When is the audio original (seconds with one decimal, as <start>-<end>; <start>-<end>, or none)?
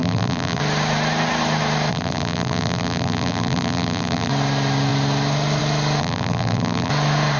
0.6-1.9; 4.3-6.0; 6.9-7.4